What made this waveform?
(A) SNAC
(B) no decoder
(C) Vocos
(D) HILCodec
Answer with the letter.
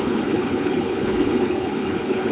D